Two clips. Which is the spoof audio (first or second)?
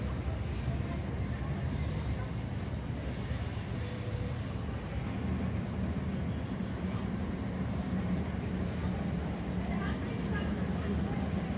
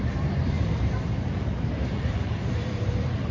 second